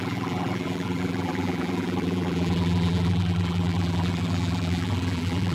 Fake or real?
fake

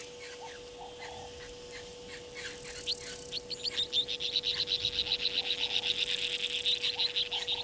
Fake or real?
real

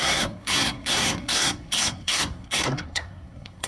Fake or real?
fake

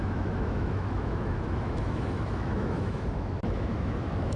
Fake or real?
fake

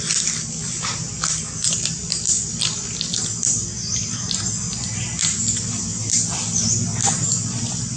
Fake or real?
real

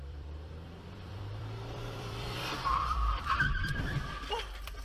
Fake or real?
fake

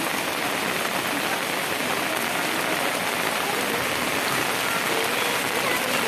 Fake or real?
real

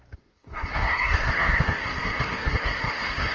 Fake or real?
fake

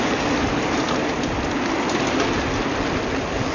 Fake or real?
real